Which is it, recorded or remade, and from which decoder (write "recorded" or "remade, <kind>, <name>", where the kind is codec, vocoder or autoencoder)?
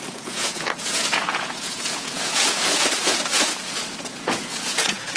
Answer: remade, vocoder, Vocos